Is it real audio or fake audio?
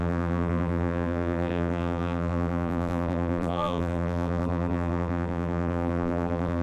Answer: fake